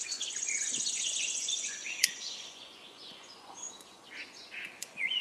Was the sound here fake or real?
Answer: fake